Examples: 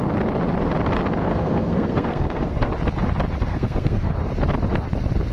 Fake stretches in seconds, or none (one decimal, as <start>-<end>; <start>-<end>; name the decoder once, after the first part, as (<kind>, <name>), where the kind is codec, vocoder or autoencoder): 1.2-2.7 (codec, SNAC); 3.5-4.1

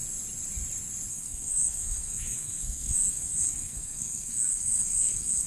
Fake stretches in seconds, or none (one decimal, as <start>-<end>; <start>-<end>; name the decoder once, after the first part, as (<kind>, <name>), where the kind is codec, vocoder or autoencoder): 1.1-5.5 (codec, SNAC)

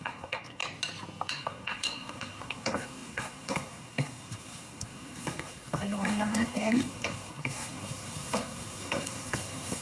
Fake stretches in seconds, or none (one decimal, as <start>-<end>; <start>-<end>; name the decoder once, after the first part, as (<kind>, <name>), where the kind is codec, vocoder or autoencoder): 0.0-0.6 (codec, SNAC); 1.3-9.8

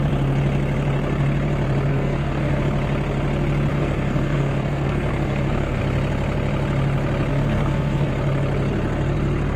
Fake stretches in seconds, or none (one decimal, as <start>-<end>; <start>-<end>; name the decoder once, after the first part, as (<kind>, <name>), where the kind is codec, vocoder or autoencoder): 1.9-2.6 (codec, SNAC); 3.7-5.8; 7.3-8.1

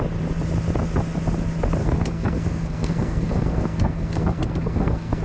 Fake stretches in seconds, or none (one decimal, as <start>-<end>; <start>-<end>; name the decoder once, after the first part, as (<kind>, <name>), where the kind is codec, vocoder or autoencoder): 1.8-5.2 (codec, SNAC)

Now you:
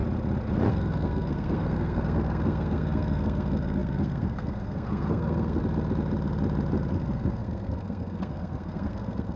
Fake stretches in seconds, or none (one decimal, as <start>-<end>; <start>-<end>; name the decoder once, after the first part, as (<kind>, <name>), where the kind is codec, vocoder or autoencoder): 0.7-5.6 (codec, SNAC); 6.9-9.4

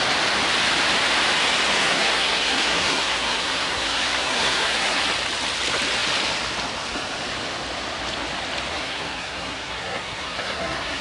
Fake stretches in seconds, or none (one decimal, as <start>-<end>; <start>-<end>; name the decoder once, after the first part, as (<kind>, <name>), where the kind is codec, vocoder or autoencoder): 1.8-5.0 (codec, SNAC); 8.7-11.0

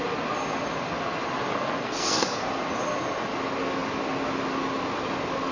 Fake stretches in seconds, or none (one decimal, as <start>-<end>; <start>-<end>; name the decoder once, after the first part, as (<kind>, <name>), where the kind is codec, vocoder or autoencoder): 1.5-2.4 (codec, SNAC)